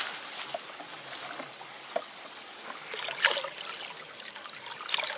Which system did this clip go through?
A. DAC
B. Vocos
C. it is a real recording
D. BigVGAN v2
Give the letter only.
C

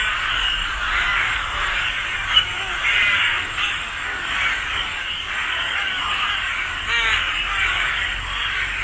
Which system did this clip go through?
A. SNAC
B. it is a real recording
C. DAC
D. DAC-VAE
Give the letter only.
C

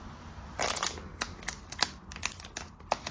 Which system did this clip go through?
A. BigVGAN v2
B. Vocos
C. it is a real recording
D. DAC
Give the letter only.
C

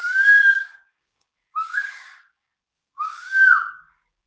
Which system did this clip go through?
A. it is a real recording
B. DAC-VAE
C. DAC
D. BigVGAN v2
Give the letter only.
C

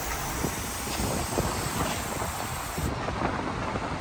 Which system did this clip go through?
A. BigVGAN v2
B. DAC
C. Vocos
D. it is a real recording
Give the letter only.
D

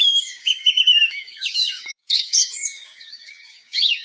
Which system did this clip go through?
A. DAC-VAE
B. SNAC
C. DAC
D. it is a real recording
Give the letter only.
C